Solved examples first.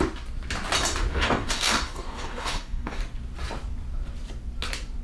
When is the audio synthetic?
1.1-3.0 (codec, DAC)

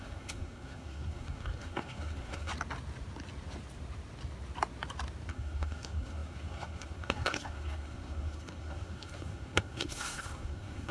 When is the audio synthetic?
0.0-2.5 (codec, SNAC); 5.3-10.9

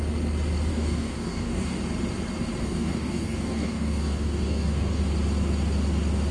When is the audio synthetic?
0.7-1.8 (codec, DAC); 2.6-5.0

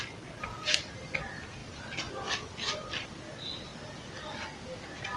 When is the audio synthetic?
none

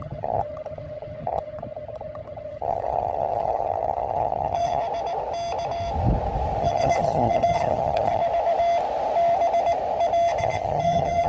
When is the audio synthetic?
0.0-4.8 (vocoder, HiFi-GAN); 6.6-8.2; 10.4-11.3